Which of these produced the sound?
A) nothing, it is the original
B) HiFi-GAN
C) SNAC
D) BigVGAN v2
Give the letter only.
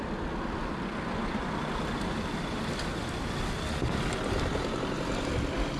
A